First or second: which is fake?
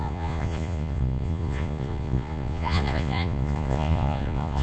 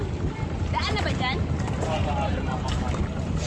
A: first